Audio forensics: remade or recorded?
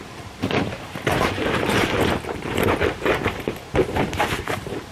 remade